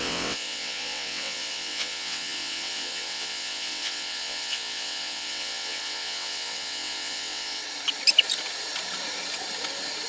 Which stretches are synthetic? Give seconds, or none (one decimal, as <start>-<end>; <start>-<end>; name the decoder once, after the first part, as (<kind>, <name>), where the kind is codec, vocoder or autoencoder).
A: 0.0-7.6 (vocoder, WaveNeXt)